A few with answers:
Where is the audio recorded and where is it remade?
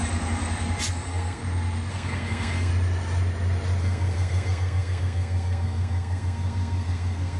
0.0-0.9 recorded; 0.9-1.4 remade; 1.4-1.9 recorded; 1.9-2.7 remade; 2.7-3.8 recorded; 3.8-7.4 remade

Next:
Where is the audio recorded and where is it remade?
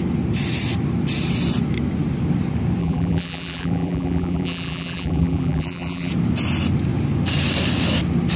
0.0-2.8 recorded; 2.8-6.1 remade; 6.1-8.4 recorded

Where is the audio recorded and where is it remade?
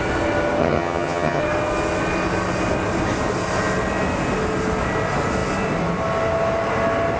0.0-0.6 recorded; 0.6-1.4 remade; 1.4-7.2 recorded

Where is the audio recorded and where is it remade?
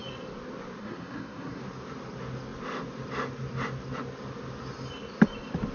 0.0-0.8 recorded; 0.8-1.6 remade; 1.6-5.7 recorded